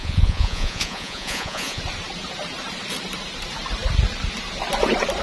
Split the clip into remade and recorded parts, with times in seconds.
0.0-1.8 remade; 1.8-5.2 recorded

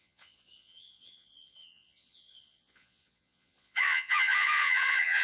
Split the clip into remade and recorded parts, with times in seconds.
0.0-5.2 remade

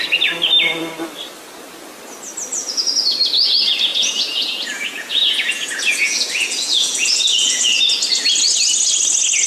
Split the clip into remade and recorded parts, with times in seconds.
0.0-2.6 recorded; 2.6-3.1 remade; 3.1-3.9 recorded; 3.9-7.8 remade; 7.8-9.5 recorded

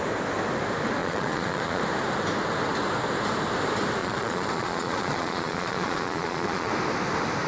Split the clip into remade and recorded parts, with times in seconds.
0.0-1.0 recorded; 1.0-1.8 remade; 1.8-4.0 recorded; 4.0-6.7 remade; 6.7-7.5 recorded

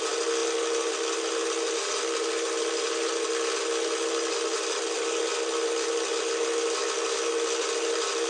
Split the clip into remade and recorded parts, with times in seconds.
0.0-8.3 recorded

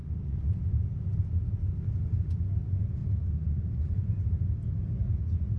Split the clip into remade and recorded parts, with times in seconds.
0.0-0.6 remade; 0.6-3.0 recorded; 3.0-4.2 remade; 4.2-5.6 recorded